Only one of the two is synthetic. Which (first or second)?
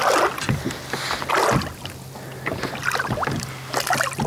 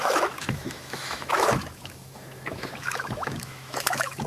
second